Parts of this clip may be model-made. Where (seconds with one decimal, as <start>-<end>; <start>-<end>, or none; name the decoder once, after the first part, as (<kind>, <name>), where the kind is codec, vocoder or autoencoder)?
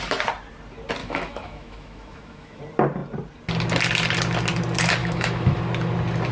1.0-2.6 (autoencoder, DAC-VAE); 5.0-5.6